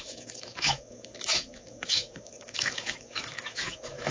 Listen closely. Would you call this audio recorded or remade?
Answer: remade